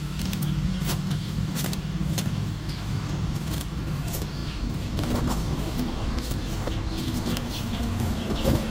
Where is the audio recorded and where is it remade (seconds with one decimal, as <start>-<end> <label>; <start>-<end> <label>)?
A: 0.0-8.7 remade